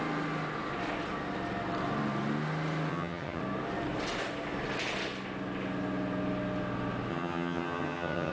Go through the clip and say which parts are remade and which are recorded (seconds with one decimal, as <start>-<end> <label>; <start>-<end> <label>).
0.0-2.9 recorded; 2.9-3.4 remade; 3.4-7.1 recorded; 7.1-8.3 remade